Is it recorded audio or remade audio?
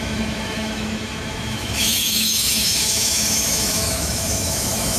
remade